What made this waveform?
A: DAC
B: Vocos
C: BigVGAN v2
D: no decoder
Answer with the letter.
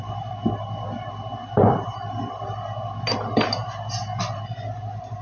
D